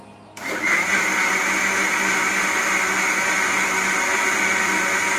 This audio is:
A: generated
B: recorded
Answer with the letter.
B